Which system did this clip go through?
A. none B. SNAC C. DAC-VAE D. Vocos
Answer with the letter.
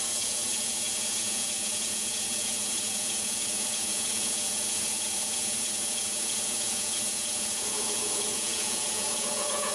D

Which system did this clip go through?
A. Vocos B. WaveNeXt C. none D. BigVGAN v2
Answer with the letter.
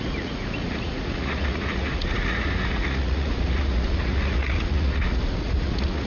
A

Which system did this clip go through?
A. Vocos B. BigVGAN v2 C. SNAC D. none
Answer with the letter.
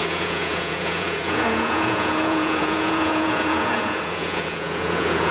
A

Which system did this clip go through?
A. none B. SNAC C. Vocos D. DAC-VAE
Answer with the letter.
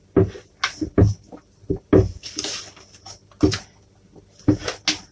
A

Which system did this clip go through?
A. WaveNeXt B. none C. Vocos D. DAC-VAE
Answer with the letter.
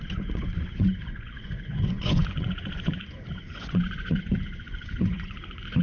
C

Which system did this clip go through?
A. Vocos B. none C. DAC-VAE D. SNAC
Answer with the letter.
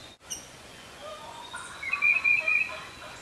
A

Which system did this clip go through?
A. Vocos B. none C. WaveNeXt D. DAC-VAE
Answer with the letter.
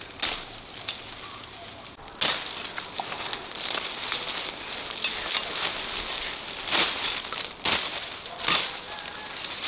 B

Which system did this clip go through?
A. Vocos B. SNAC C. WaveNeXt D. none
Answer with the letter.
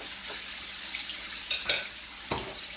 D